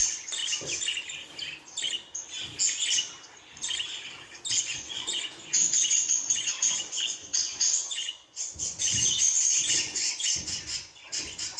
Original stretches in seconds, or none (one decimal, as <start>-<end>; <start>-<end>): 0.4-4.6